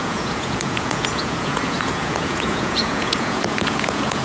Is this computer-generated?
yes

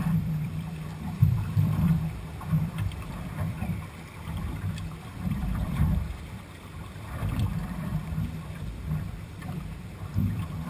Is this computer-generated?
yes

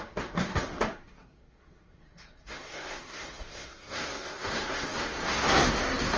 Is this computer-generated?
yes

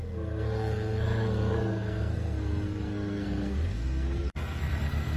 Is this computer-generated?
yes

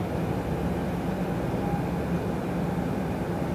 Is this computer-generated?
no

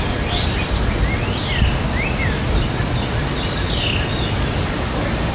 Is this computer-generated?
no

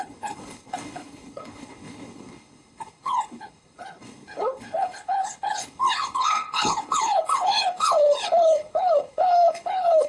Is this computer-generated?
yes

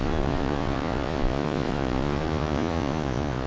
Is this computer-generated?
yes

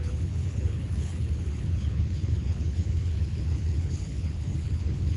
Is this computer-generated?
yes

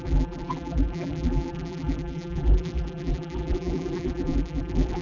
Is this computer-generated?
yes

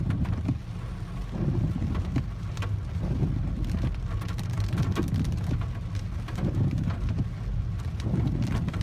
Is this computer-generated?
no